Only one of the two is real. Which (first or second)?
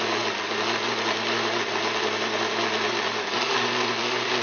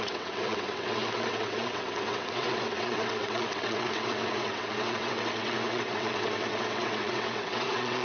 first